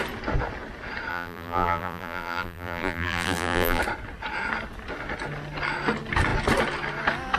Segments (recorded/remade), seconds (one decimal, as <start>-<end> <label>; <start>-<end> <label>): 0.0-1.1 recorded; 1.1-3.8 remade; 3.8-7.4 recorded